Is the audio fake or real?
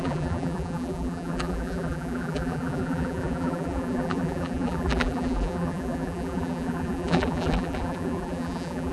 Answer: fake